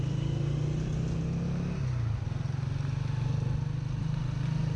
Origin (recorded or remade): recorded